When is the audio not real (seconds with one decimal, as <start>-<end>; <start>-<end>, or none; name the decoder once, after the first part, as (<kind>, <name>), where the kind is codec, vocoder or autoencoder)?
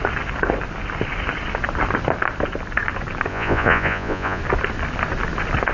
3.3-4.4 (vocoder, Vocos)